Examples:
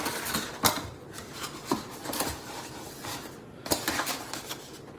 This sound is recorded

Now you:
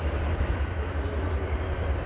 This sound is recorded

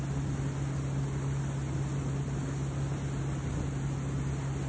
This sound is recorded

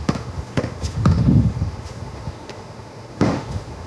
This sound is remade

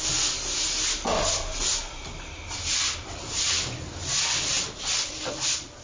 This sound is recorded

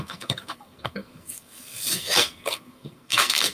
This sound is remade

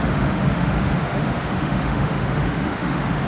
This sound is remade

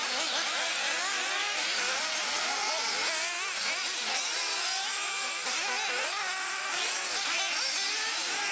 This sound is recorded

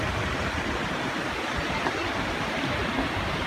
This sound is remade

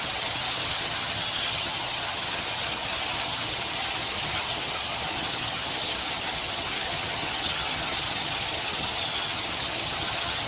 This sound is remade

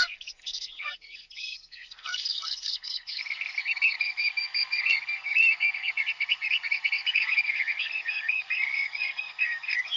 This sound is remade